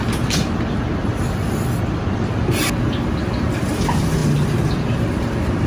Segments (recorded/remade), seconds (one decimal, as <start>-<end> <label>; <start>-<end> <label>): 0.0-5.7 recorded